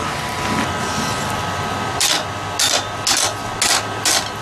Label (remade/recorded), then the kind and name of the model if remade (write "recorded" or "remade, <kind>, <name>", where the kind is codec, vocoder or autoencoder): recorded